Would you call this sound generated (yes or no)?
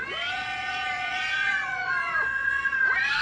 yes